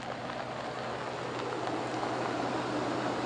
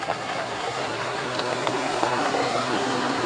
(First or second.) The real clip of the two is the first